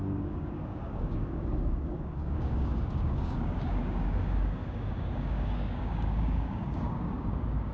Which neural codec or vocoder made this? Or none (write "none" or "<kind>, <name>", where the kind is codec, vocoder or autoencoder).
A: codec, DAC